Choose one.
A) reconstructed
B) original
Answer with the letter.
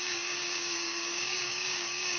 A